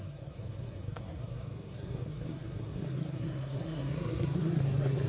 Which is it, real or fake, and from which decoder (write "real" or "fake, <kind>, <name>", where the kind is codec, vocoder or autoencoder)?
fake, codec, SNAC